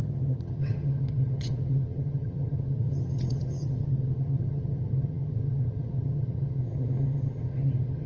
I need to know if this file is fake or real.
fake